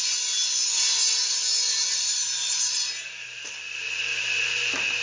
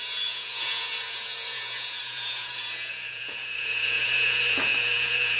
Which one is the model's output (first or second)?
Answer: second